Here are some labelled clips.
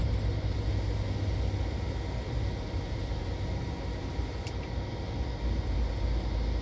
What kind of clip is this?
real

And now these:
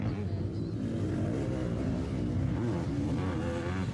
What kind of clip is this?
real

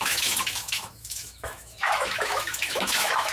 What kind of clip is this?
fake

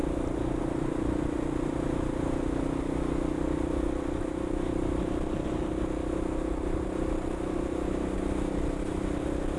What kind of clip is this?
real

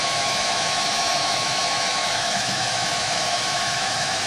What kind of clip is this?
fake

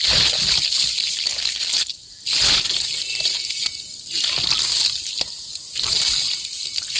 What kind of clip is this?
real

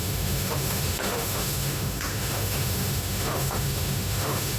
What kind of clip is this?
fake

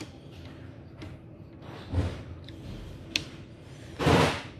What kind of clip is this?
real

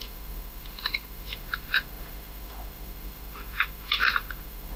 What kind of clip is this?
fake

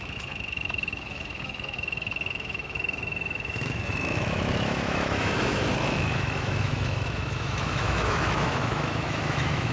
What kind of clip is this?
fake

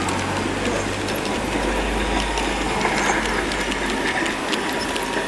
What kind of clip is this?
real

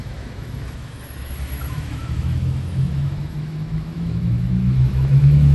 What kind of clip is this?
fake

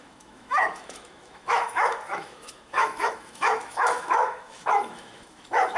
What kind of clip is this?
fake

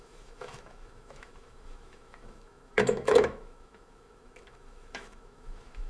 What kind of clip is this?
fake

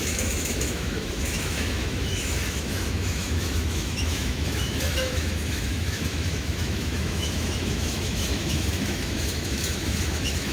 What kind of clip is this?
fake